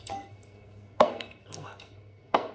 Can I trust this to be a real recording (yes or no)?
no